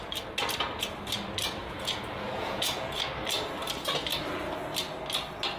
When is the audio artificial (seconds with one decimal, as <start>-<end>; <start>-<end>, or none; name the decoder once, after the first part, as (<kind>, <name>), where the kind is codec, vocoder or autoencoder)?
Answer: 1.6-3.1 (vocoder, Vocos)